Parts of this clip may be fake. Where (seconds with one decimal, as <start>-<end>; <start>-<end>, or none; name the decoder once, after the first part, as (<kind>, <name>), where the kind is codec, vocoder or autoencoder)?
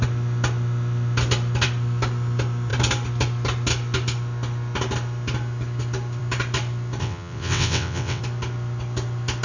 7.0-8.2 (vocoder, WaveNeXt)